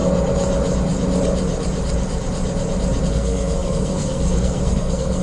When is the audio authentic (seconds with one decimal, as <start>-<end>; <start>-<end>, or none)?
0.0-3.1